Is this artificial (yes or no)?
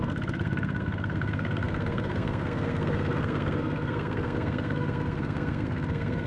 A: yes